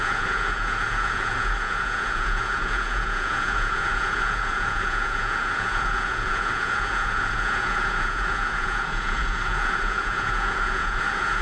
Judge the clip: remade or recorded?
remade